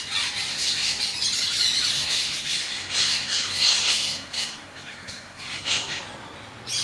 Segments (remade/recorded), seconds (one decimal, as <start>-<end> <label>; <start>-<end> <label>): 0.0-0.5 recorded; 0.5-1.0 remade; 1.0-1.9 recorded; 1.9-6.0 remade; 6.0-6.8 recorded